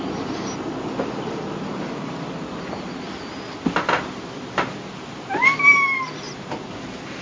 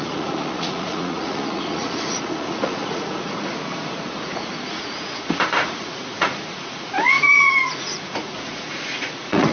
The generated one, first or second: second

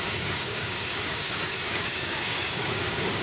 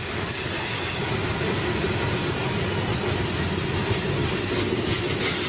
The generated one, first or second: first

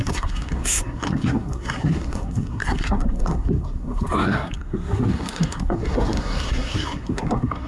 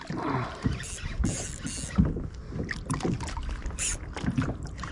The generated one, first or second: first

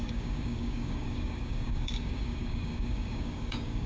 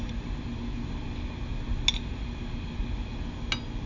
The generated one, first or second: first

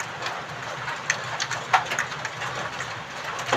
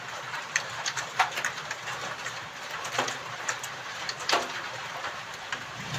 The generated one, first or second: second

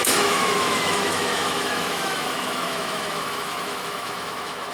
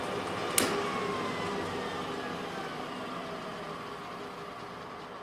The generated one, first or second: first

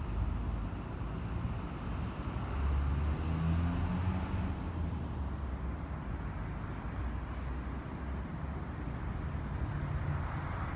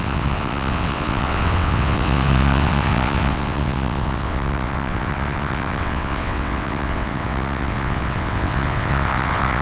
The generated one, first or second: second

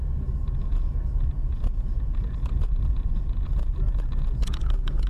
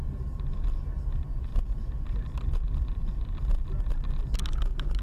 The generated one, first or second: first